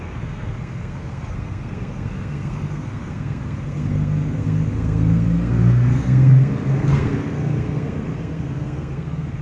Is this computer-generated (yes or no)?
yes